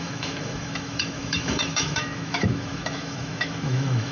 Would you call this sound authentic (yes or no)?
no